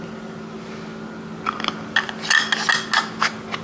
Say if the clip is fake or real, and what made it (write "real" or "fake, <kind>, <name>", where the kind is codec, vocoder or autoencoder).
real